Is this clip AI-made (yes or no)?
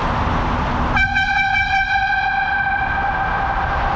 no